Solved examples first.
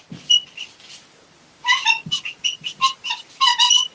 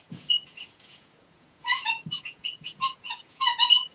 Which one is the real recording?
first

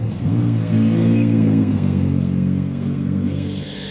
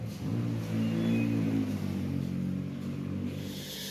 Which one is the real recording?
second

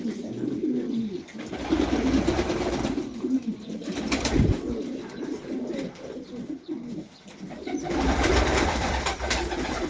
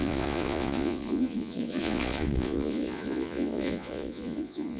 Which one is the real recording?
first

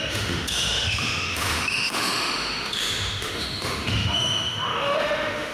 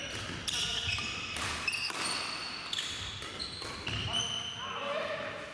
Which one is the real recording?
second